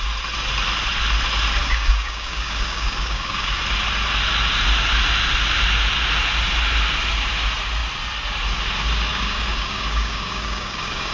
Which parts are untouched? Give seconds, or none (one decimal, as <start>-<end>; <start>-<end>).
0.0-1.6; 3.6-9.1